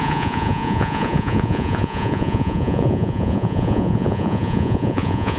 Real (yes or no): no